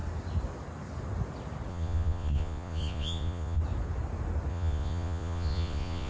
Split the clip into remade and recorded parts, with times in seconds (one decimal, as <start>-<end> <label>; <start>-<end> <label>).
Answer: 0.0-1.7 recorded; 1.7-3.6 remade; 3.6-4.5 recorded; 4.5-6.1 remade